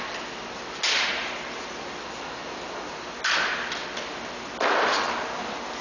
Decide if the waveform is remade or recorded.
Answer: recorded